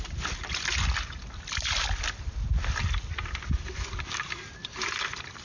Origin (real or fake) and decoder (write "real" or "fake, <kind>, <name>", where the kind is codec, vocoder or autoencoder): real